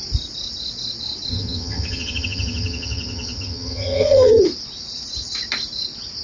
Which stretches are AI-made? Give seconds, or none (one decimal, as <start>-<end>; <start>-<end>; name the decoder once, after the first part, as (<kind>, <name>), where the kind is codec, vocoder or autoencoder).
1.3-4.4 (vocoder, HiFi-GAN)

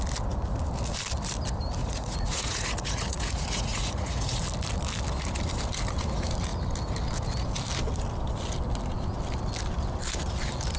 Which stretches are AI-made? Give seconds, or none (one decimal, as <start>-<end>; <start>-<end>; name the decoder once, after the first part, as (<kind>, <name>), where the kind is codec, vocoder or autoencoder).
1.8-4.4 (vocoder, Vocos)

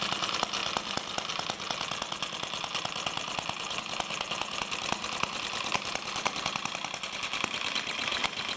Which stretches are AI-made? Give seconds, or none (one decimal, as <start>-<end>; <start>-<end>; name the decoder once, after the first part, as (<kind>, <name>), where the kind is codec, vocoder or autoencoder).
0.0-0.6 (vocoder, BigVGAN v2); 3.8-8.6

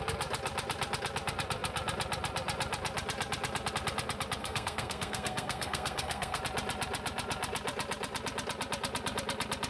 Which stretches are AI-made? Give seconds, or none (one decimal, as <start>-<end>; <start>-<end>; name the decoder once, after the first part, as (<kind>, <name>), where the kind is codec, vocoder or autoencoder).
4.4-6.4 (codec, SNAC)